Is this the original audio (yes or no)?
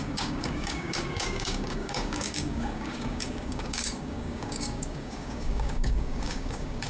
no